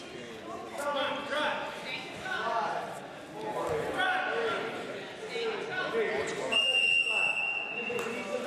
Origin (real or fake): real